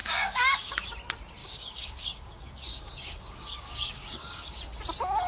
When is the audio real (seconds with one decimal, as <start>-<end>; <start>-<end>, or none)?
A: 0.9-1.4; 4.6-5.3